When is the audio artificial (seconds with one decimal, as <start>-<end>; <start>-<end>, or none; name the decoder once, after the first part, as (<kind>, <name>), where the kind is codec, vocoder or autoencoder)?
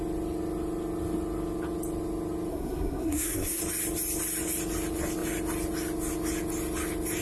2.5-3.6 (codec, SNAC)